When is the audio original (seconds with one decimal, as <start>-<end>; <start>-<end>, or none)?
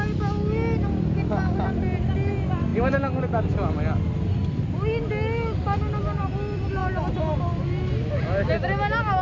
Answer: 0.0-9.2